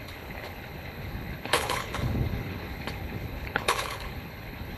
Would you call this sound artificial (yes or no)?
yes